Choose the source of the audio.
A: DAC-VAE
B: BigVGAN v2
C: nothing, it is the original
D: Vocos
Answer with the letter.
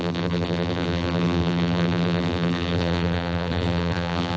B